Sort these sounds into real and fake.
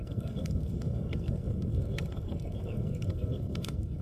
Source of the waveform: fake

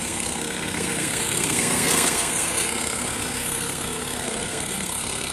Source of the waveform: fake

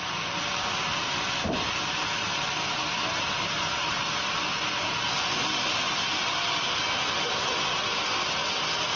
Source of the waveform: real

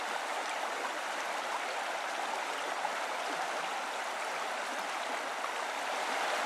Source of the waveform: real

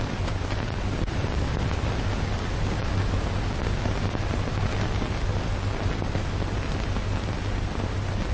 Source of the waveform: real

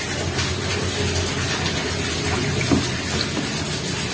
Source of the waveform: real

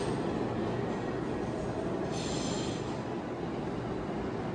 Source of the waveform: real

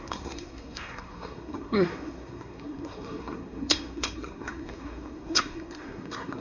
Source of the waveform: fake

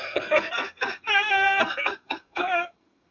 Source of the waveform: fake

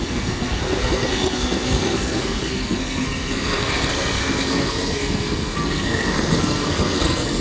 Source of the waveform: fake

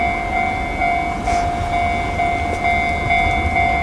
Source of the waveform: real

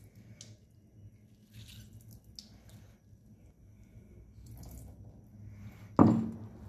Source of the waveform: real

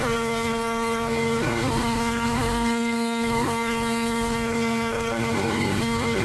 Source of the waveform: fake